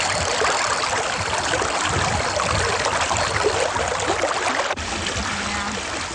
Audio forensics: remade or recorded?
recorded